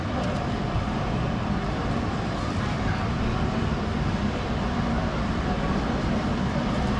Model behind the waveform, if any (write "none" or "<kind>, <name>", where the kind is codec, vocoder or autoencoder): none